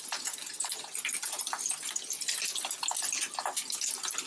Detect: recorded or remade recorded